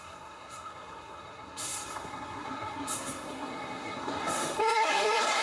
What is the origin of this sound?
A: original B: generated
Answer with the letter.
B